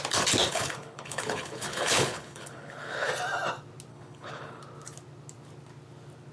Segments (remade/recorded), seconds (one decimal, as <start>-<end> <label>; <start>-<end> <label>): 0.0-0.5 recorded; 0.5-3.1 remade; 3.1-3.9 recorded; 3.9-4.6 remade; 4.6-6.3 recorded